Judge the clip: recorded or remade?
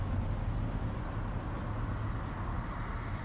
recorded